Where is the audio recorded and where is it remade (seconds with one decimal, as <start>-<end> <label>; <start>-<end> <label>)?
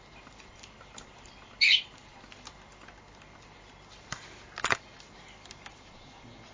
0.0-6.5 recorded